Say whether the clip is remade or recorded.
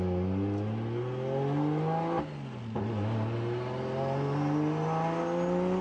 recorded